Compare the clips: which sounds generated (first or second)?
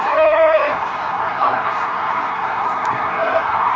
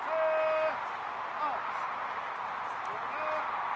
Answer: first